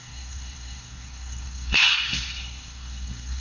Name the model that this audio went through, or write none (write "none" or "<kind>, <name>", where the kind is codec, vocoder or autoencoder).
codec, SNAC